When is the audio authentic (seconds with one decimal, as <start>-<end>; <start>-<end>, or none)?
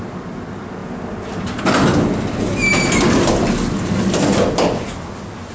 0.0-0.8; 1.6-2.7; 3.3-5.5